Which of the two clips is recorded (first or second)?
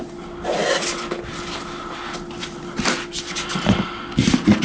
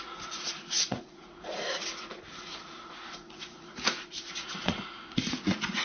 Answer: first